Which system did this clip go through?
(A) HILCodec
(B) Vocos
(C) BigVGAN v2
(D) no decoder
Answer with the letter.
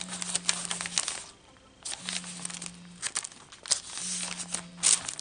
D